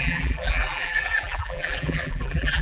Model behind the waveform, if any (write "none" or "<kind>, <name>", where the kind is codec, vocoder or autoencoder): vocoder, BigVGAN v2